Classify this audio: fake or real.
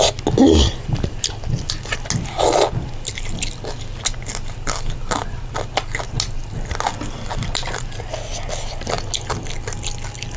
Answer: real